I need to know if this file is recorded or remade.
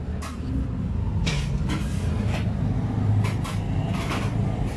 recorded